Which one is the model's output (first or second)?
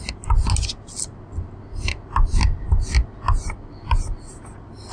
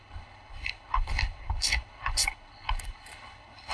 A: second